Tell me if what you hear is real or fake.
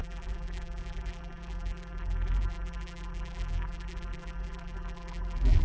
fake